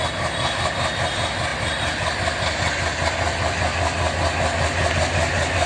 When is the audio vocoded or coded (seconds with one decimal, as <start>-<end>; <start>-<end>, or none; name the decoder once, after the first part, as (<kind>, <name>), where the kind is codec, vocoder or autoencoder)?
none